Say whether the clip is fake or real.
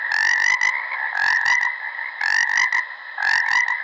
real